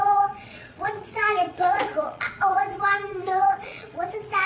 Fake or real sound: fake